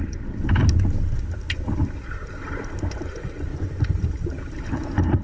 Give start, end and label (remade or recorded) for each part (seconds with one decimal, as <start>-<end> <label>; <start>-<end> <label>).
0.0-3.5 recorded; 3.5-4.0 remade; 4.0-5.2 recorded